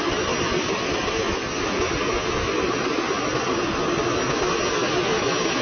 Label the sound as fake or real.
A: real